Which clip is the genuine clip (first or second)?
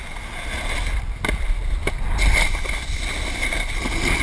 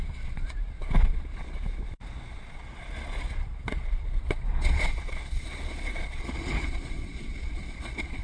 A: first